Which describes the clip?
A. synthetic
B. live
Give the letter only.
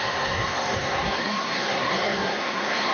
A